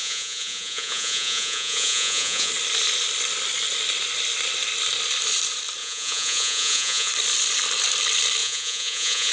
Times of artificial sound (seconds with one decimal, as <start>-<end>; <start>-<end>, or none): 0.0-2.5; 5.8-7.1; 8.4-9.3